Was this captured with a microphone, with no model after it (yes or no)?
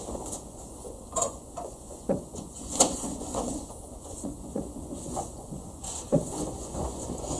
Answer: no